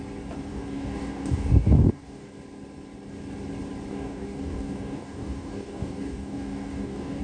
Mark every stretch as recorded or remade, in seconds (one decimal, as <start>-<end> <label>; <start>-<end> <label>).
0.0-0.5 recorded; 0.5-2.3 remade; 2.3-3.9 recorded; 3.9-7.2 remade

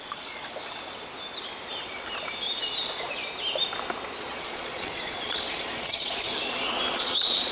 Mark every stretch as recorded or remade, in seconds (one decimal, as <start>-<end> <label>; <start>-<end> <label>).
0.0-0.5 remade; 0.5-4.3 recorded; 4.3-6.3 remade; 6.3-6.9 recorded; 6.9-7.5 remade

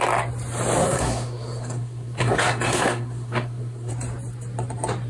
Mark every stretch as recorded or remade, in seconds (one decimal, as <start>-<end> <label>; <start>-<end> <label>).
0.0-0.8 recorded; 0.8-3.9 remade; 3.9-5.1 recorded

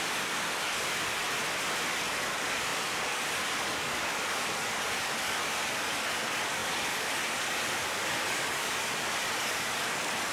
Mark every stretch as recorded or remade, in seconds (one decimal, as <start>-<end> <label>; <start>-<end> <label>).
0.0-1.2 remade; 1.2-1.9 recorded; 1.9-10.3 remade

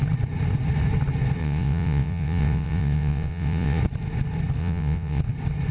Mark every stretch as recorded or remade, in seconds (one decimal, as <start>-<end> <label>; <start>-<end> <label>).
0.0-1.4 recorded; 1.4-3.8 remade; 3.8-4.6 recorded; 4.6-5.2 remade; 5.2-5.7 recorded